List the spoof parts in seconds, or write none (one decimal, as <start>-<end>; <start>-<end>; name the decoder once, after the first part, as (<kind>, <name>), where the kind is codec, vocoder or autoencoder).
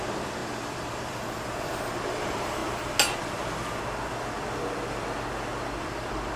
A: 0.0-2.6 (vocoder, BigVGAN v2); 5.8-6.4